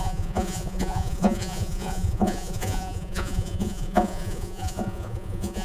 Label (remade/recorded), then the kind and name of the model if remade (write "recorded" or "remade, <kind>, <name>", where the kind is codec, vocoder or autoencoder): remade, vocoder, Vocos